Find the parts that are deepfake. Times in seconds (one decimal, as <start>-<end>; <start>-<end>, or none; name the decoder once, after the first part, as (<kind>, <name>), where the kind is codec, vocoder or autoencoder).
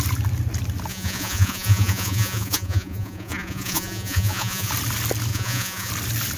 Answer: 0.9-4.7 (vocoder, Vocos); 5.3-5.9